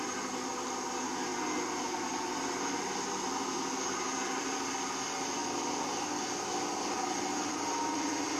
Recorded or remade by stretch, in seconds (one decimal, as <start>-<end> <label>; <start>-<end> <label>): 0.0-8.4 recorded